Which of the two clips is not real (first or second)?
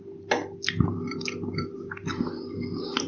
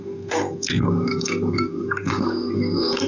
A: second